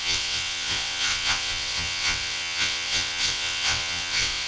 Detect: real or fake fake